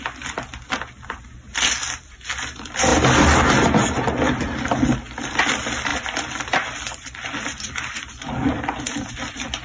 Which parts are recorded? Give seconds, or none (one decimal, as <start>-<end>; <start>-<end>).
0.0-5.9; 9.1-9.6

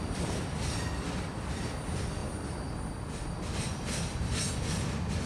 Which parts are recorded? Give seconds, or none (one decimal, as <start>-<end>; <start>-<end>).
0.0-5.3

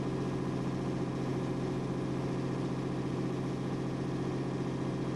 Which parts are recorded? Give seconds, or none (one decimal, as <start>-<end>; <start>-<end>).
0.0-5.2

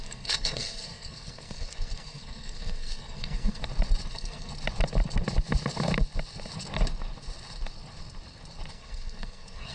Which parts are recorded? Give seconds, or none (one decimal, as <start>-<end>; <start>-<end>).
3.6-4.1; 4.5-8.7

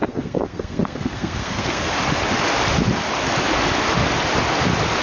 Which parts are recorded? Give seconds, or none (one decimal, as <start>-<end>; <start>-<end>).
1.9-5.0

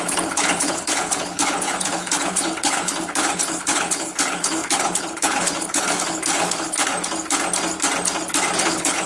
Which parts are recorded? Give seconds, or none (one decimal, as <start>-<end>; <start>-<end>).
6.9-8.6

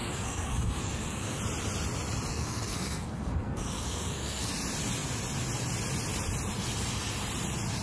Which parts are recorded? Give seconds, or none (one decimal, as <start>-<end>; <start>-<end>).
1.4-2.3; 4.5-7.8

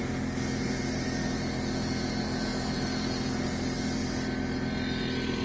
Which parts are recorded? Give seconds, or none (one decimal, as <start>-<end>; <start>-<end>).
0.0-5.4